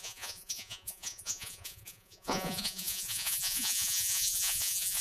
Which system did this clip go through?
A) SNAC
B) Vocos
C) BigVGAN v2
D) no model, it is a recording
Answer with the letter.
B